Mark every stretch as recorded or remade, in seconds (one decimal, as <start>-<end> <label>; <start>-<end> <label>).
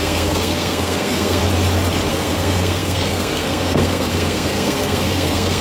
0.0-1.4 remade; 1.4-2.1 recorded; 2.1-5.6 remade